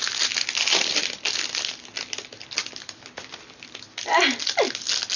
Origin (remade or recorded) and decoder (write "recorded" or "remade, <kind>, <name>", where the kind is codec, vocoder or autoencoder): recorded